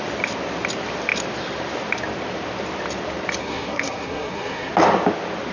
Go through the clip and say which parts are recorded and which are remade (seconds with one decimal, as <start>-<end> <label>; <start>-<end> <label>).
0.0-3.4 recorded; 3.4-4.7 remade; 4.7-5.5 recorded